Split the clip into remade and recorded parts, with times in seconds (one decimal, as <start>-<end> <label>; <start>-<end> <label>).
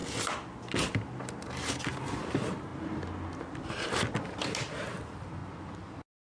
0.0-1.9 recorded; 1.9-2.7 remade; 2.7-3.3 recorded; 3.3-6.3 remade